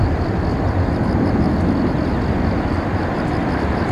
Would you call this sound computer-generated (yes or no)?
no